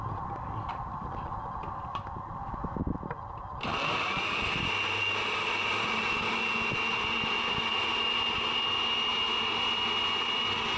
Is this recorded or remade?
recorded